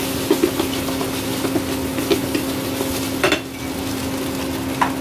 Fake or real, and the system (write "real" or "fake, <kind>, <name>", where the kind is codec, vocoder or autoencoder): real